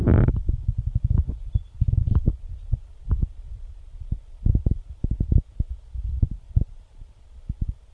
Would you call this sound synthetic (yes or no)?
no